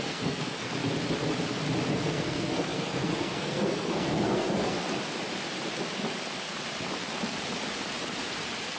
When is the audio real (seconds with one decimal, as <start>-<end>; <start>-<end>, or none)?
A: 0.8-1.9; 4.8-8.8